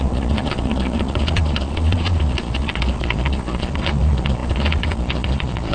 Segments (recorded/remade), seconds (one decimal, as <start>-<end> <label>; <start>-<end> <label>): 0.0-5.7 remade